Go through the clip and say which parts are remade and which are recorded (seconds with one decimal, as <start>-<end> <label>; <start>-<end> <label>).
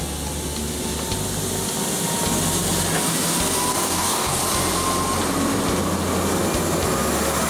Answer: 0.0-3.7 recorded; 3.7-4.4 remade; 4.4-7.5 recorded